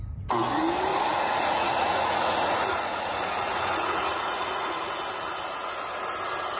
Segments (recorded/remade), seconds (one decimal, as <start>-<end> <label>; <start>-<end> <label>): 0.0-0.9 recorded; 0.9-4.9 remade; 4.9-6.6 recorded